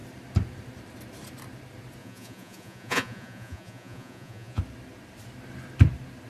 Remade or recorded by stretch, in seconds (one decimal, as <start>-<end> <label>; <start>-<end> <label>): 0.0-2.0 recorded; 2.0-4.6 remade; 4.6-6.3 recorded